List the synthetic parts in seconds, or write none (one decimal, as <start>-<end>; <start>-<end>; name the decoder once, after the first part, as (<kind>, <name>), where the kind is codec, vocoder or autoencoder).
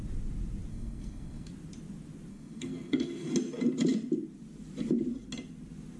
0.7-1.5 (codec, SNAC); 2.3-3.3